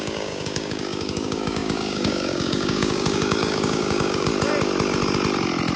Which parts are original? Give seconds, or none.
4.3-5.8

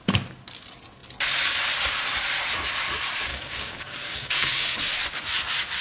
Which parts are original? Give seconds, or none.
0.0-3.3; 4.8-5.8

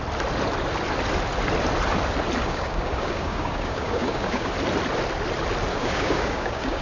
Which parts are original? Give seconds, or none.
0.0-2.4; 4.5-5.7